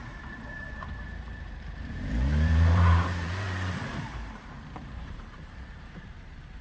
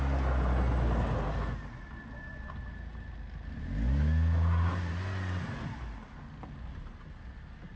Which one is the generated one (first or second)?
first